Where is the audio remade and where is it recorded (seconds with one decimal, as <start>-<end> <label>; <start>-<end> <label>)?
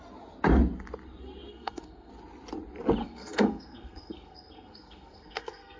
0.0-1.5 recorded; 1.5-2.1 remade; 2.1-3.0 recorded; 3.0-5.8 remade